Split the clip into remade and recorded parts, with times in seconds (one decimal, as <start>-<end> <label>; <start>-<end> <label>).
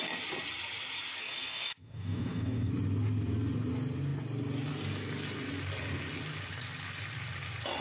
0.0-1.2 recorded; 1.2-2.7 remade; 2.7-7.8 recorded